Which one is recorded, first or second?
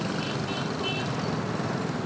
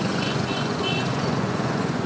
first